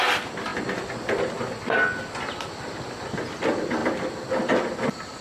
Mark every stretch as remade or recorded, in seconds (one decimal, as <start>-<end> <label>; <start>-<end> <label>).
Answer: 0.0-5.2 recorded